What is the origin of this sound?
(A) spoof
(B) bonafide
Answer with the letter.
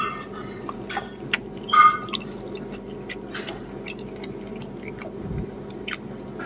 B